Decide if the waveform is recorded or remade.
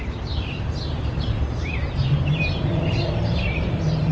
remade